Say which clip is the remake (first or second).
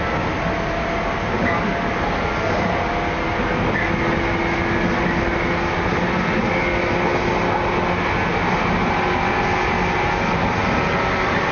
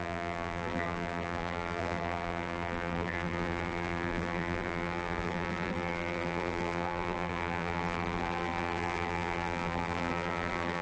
second